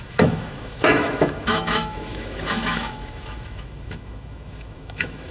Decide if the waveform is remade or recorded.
remade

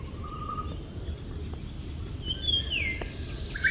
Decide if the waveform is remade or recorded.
recorded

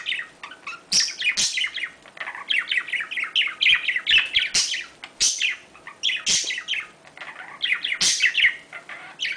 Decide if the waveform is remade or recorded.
recorded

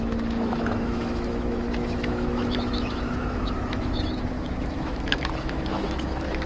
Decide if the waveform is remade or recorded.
remade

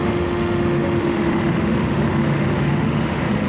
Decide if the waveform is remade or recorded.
remade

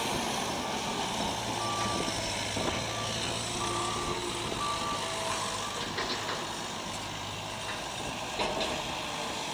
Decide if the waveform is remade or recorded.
recorded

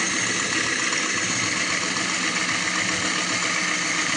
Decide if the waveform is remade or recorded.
recorded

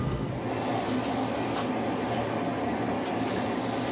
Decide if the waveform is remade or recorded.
recorded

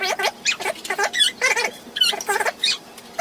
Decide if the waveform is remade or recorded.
recorded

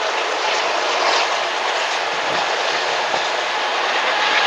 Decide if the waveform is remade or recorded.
recorded